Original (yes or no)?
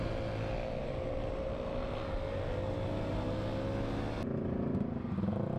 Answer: yes